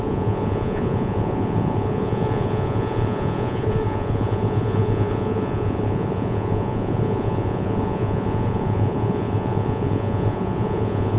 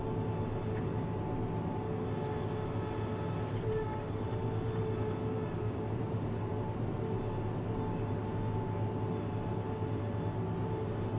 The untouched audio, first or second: second